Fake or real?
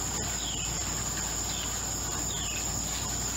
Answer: real